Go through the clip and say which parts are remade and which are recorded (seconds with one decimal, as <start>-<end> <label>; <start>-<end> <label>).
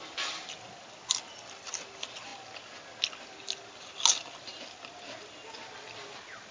0.0-6.5 recorded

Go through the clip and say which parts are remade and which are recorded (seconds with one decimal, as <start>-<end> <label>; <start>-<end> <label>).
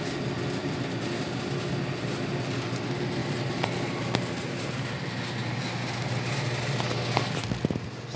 0.0-0.6 recorded; 0.6-1.2 remade; 1.2-3.2 recorded; 3.2-4.6 remade; 4.6-8.2 recorded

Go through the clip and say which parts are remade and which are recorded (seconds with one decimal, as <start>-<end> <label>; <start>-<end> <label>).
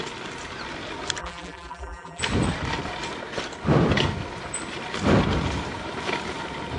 0.0-1.2 recorded; 1.2-2.2 remade; 2.2-6.8 recorded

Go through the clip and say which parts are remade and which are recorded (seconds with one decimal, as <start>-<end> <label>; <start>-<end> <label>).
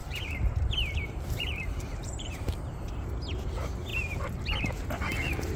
0.0-3.4 remade; 3.4-5.6 recorded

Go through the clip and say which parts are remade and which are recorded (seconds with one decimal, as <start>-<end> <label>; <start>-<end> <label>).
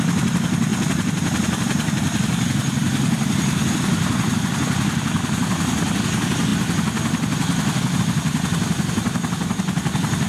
0.0-10.3 recorded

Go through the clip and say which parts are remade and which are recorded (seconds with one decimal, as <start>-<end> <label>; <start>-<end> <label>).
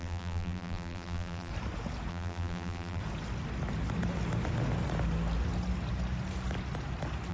0.0-1.5 remade; 1.5-2.1 recorded; 2.1-3.0 remade; 3.0-7.3 recorded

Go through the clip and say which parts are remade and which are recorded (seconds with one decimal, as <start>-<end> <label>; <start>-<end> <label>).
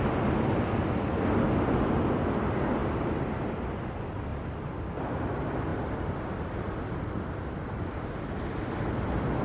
0.0-5.7 recorded; 5.7-8.8 remade; 8.8-9.4 recorded